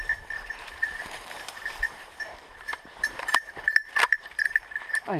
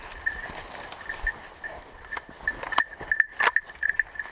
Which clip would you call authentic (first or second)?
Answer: second